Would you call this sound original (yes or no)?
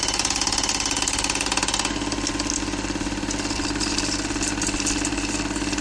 yes